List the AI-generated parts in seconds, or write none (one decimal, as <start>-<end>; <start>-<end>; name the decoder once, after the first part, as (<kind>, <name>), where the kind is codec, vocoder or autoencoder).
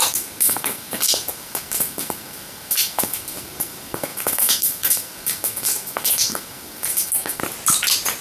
0.0-7.4 (codec, SNAC)